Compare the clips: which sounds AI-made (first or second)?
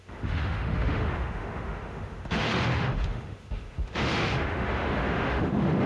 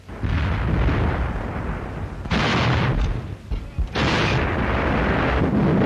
first